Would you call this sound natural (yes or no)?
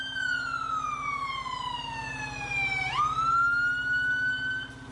yes